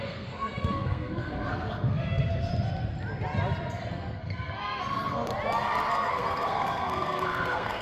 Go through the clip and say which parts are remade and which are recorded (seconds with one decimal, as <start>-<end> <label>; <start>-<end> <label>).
0.0-2.5 remade; 2.5-3.9 recorded; 3.9-5.3 remade; 5.3-5.9 recorded; 5.9-7.8 remade